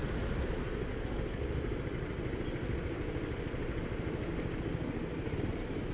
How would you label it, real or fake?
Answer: real